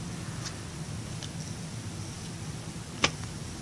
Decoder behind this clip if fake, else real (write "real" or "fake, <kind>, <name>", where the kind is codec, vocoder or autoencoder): real